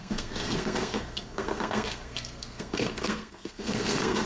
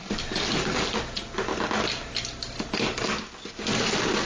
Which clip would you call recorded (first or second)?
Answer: second